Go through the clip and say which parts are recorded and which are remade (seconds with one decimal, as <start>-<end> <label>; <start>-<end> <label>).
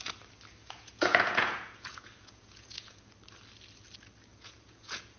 0.0-0.6 recorded; 0.6-3.1 remade; 3.1-4.3 recorded; 4.3-5.2 remade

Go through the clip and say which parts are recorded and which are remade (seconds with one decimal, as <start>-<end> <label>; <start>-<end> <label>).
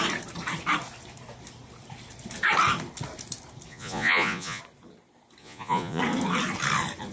0.0-3.7 recorded; 3.7-4.6 remade; 4.6-5.4 recorded; 5.4-6.0 remade; 6.0-7.1 recorded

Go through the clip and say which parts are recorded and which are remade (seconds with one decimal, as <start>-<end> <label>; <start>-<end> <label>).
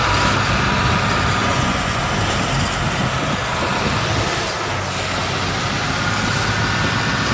0.0-1.4 recorded; 1.4-2.0 remade; 2.0-7.3 recorded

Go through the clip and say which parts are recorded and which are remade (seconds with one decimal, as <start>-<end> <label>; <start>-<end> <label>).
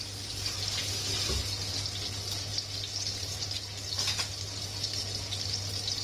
0.0-6.0 recorded